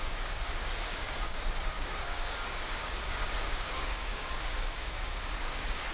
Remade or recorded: remade